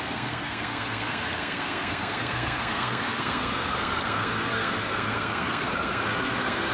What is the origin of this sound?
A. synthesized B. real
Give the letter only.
A